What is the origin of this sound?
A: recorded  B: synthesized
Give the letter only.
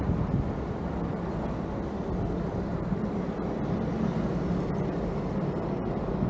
A